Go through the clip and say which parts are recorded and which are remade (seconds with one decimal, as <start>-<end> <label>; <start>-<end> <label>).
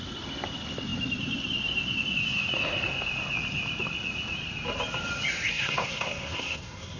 0.0-5.5 recorded; 5.5-7.0 remade